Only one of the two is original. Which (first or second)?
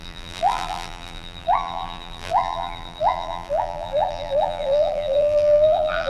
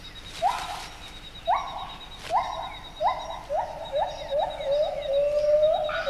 second